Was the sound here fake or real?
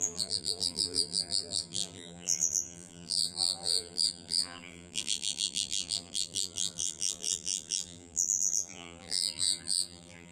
fake